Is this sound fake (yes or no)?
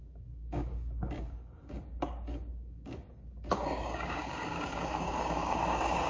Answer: yes